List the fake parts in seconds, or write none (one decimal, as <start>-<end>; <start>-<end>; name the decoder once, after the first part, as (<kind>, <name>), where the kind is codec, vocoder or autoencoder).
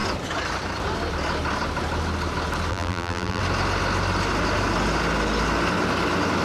2.7-3.4 (vocoder, BigVGAN v2)